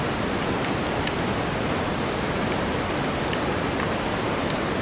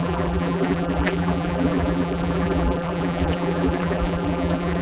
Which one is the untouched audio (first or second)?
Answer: first